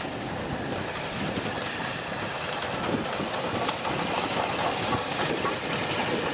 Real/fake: real